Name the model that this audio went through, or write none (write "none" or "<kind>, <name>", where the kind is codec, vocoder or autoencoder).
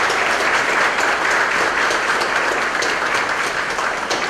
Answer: none